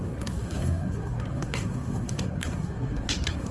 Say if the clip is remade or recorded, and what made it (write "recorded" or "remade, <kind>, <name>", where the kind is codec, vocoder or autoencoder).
remade, codec, SNAC